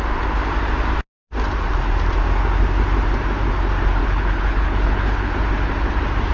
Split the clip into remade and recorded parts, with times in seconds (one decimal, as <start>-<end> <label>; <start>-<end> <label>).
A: 0.0-4.0 recorded; 4.0-5.3 remade; 5.3-6.3 recorded